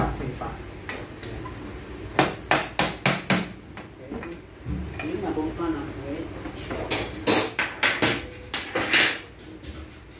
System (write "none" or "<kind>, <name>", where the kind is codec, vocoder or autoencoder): none